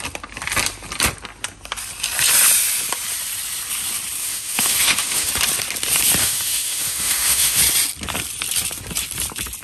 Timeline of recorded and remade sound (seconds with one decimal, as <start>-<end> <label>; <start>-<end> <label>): 0.0-4.2 recorded; 4.2-5.3 remade; 5.3-6.2 recorded; 6.2-7.6 remade; 7.6-9.6 recorded